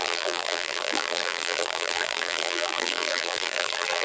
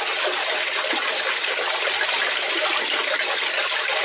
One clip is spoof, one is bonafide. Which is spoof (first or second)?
first